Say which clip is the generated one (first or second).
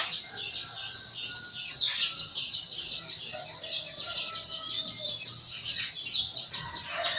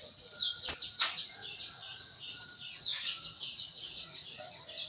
second